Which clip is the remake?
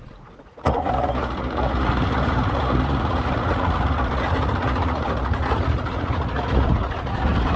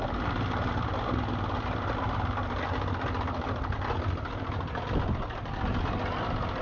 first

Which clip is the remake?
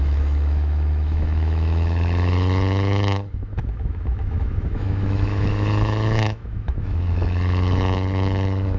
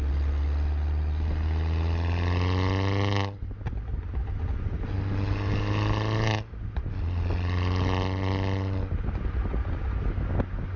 first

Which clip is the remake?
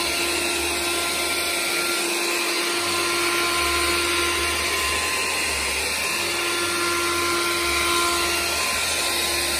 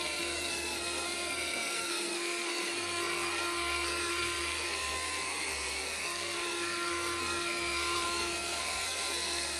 second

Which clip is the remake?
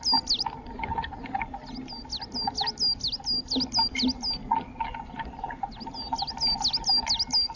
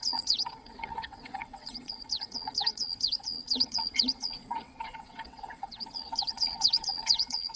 second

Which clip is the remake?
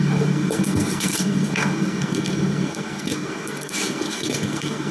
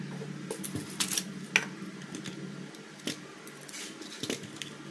first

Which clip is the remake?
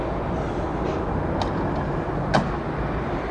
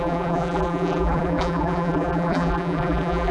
second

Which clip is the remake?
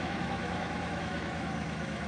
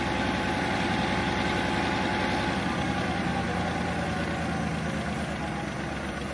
first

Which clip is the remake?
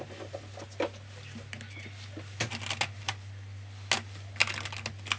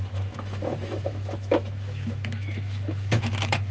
second